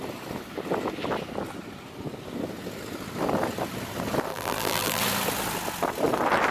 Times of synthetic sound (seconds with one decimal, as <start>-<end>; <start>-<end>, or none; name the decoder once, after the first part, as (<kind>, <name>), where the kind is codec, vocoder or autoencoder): 4.3-5.0 (vocoder, BigVGAN v2)